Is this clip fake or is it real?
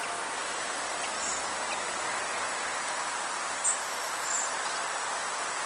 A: real